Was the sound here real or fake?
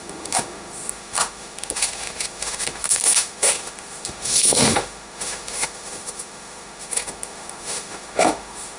fake